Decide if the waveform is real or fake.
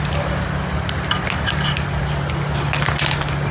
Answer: real